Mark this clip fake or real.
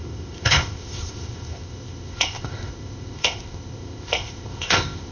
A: fake